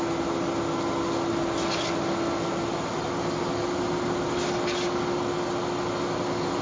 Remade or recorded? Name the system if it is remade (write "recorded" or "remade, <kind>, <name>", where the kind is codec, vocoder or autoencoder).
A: recorded